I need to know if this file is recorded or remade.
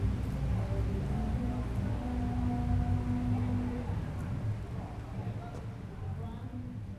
recorded